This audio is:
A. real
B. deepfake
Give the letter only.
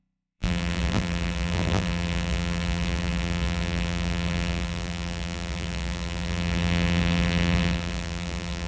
B